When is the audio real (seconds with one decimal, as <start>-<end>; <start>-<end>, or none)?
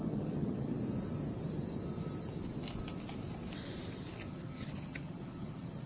0.8-4.3